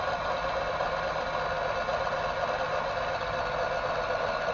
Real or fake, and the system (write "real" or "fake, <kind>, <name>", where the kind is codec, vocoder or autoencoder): real